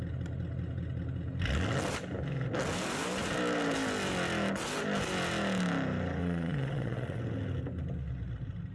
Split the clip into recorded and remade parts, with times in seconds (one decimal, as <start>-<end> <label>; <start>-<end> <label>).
0.0-6.2 recorded; 6.2-7.2 remade; 7.2-8.7 recorded